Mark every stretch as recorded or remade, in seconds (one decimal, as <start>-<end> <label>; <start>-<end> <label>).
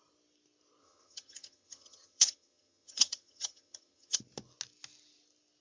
0.0-0.8 recorded; 0.8-4.2 remade; 4.2-5.6 recorded